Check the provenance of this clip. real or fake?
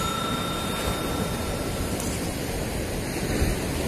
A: fake